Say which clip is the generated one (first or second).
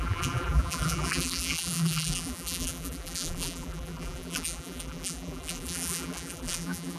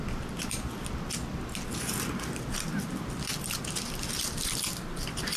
first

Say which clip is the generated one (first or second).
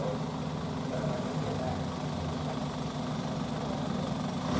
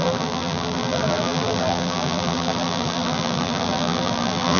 second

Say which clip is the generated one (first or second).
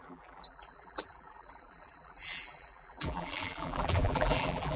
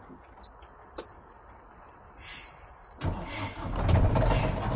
first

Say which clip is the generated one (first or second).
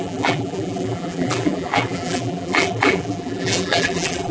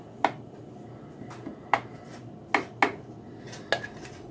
first